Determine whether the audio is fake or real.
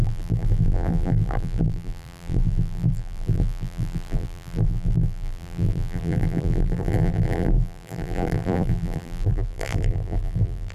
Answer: fake